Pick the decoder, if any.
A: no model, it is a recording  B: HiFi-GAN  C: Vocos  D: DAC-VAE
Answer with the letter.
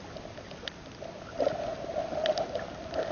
A